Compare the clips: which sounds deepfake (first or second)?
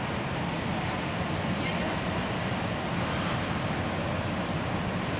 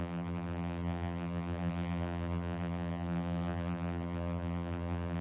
second